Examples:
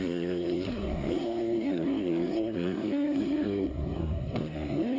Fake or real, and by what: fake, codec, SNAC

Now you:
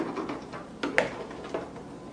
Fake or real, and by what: real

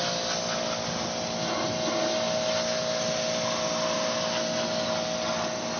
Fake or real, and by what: real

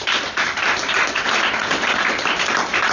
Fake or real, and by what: real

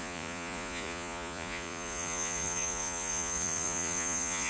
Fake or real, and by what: fake, vocoder, Vocos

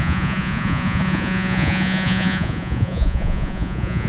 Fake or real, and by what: fake, vocoder, Vocos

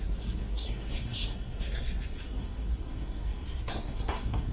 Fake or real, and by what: fake, codec, SNAC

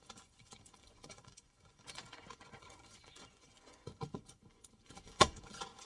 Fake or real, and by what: fake, vocoder, Vocos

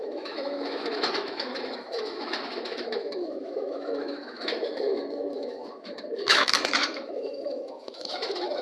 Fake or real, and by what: fake, autoencoder, DAC-VAE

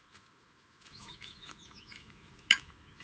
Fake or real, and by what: fake, autoencoder, DAC-VAE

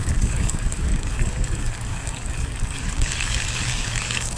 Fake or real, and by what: fake, codec, DAC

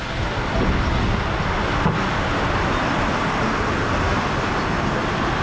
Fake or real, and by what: real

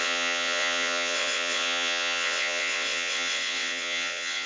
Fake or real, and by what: fake, vocoder, WaveNeXt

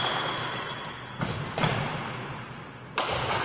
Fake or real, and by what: real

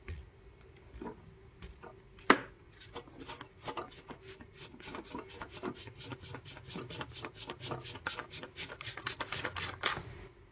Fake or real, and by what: real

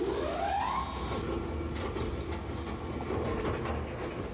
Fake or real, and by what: real